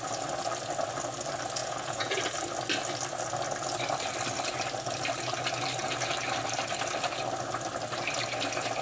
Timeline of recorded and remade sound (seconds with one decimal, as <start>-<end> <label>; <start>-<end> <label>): 0.0-1.6 recorded; 1.6-2.2 remade; 2.2-8.8 recorded